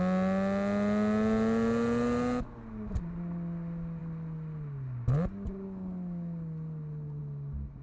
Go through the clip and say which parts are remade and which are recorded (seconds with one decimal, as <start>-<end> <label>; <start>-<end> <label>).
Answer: 0.0-7.8 recorded